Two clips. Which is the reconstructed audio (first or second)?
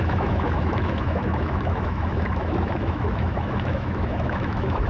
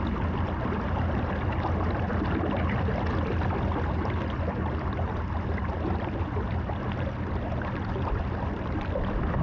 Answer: first